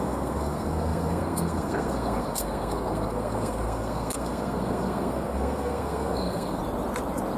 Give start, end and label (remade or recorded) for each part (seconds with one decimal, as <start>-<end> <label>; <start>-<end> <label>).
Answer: 0.0-6.6 remade; 6.6-7.4 recorded

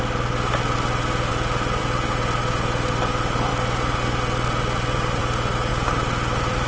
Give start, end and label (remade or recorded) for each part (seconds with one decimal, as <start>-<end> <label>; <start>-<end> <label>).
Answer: 0.0-1.3 recorded; 1.3-1.8 remade; 1.8-5.7 recorded; 5.7-6.7 remade

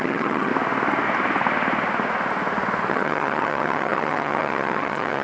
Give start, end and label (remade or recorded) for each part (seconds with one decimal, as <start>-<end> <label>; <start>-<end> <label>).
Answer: 0.0-0.5 remade; 0.5-2.9 recorded; 2.9-5.2 remade

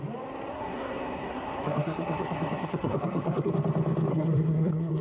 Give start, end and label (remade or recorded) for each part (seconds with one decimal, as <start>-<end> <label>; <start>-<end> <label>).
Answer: 0.0-0.5 recorded; 0.5-3.5 remade; 3.5-4.1 recorded; 4.1-5.0 remade

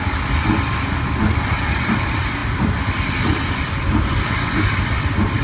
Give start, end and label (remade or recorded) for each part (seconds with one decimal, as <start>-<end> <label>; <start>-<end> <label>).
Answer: 0.0-5.4 recorded